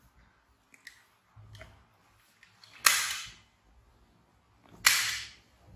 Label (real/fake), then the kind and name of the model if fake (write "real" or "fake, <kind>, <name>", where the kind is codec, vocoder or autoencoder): real